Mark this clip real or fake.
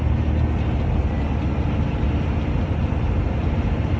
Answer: real